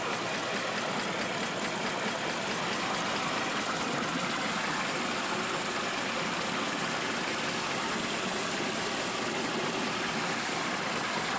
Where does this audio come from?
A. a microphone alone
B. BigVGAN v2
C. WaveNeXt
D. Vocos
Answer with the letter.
A